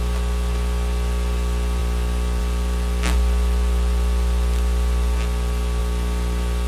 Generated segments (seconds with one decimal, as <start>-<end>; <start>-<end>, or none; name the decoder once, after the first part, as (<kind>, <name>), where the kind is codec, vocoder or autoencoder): 1.8-2.4 (vocoder, BigVGAN v2)